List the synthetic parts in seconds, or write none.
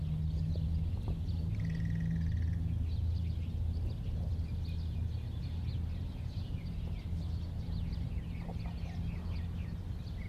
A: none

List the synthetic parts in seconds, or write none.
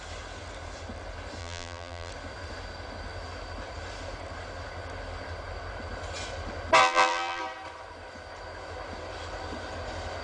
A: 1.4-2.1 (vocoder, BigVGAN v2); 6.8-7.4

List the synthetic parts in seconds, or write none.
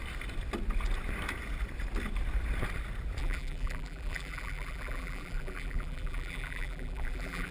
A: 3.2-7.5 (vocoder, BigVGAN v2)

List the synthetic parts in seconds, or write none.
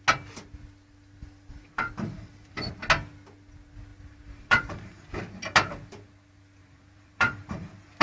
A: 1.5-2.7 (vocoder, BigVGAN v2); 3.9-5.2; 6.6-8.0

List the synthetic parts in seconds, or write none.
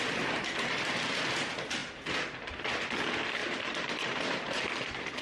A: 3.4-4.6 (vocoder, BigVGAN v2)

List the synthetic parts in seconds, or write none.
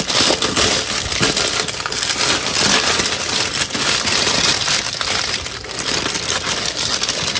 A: 5.6-7.0 (vocoder, BigVGAN v2)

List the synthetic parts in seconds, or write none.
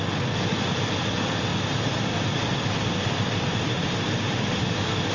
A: 1.5-4.6 (vocoder, BigVGAN v2)